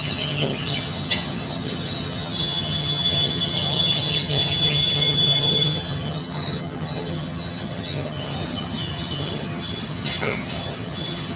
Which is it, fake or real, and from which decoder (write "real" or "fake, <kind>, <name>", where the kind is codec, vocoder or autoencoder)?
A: fake, vocoder, HiFi-GAN